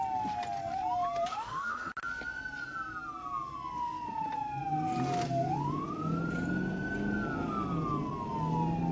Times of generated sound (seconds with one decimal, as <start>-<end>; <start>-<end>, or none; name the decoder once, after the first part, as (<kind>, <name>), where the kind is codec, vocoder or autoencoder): 1.3-1.9 (autoencoder, DAC-VAE)